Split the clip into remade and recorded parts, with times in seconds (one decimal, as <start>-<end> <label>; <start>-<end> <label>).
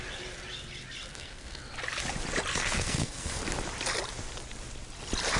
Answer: 0.0-1.1 recorded; 1.1-1.6 remade; 1.6-2.5 recorded; 2.5-3.4 remade; 3.4-5.4 recorded